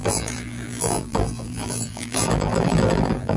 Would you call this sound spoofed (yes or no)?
yes